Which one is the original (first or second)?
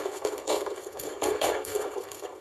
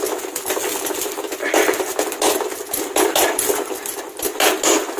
second